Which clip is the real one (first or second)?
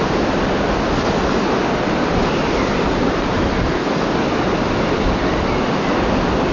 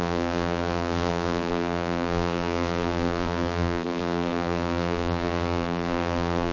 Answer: first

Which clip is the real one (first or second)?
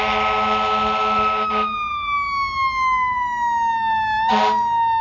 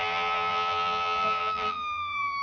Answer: first